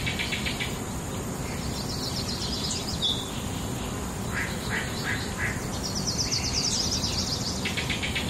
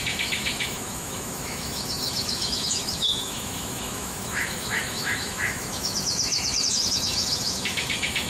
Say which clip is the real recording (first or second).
first